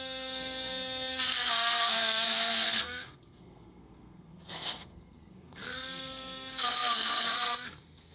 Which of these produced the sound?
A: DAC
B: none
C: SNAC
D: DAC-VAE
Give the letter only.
C